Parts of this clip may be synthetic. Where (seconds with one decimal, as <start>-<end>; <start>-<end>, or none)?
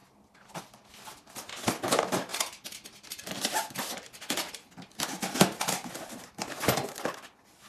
none